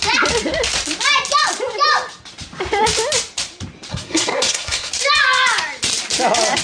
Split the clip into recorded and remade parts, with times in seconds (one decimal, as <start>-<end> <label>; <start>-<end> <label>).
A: 0.0-3.9 recorded; 3.9-4.9 remade; 4.9-6.6 recorded